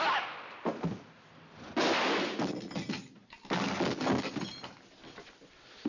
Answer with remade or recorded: recorded